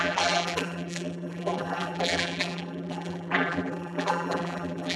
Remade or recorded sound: remade